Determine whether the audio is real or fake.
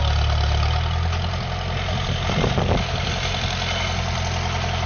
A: real